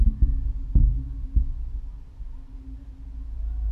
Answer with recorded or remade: recorded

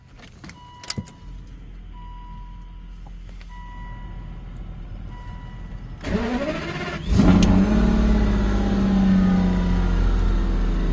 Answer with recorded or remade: recorded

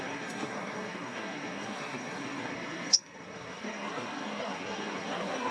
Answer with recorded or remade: remade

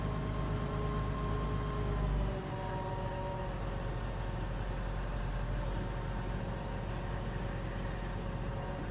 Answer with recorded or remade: recorded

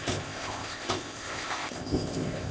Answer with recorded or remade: remade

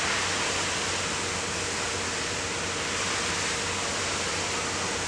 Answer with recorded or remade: remade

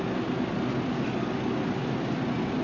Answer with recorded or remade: recorded